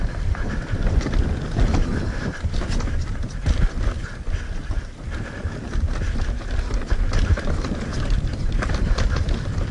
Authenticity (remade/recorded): recorded